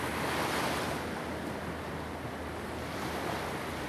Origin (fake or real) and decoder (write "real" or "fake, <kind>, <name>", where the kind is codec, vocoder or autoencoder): real